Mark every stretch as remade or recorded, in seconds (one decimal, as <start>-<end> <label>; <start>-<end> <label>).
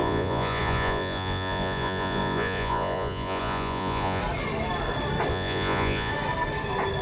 0.0-4.2 remade; 4.2-5.3 recorded; 5.3-6.1 remade; 6.1-7.0 recorded